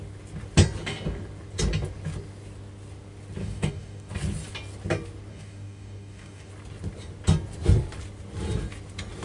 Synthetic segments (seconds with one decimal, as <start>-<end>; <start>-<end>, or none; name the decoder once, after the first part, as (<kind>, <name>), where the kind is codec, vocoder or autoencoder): 3.4-4.1 (codec, DAC); 5.3-6.5